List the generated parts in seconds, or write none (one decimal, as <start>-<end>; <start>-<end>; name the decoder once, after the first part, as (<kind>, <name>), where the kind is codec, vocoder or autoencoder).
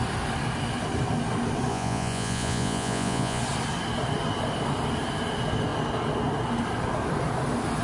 1.7-3.4 (vocoder, Vocos)